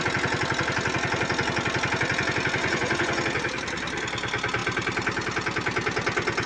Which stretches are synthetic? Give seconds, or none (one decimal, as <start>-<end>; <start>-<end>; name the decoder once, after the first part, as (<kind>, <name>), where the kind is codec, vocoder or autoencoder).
2.6-3.2 (vocoder, Vocos)